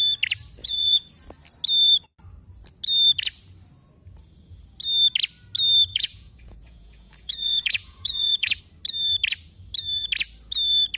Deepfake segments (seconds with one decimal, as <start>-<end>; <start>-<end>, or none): 0.6-1.1; 5.9-8.6